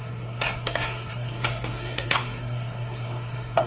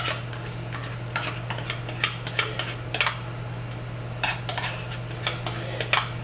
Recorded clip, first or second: second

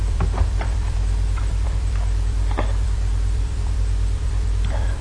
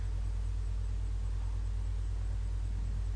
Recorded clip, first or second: second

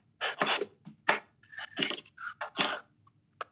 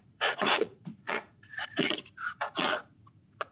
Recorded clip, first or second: first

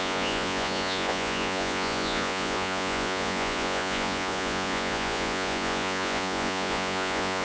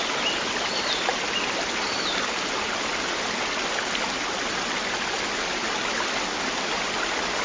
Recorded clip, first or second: second